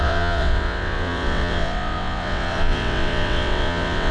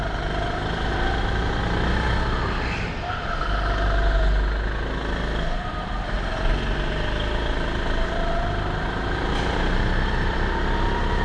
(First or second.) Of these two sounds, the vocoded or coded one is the first